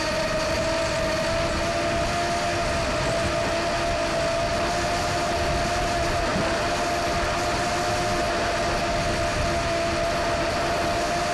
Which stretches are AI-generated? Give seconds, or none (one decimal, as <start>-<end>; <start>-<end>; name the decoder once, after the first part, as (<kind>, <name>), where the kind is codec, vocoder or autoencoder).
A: none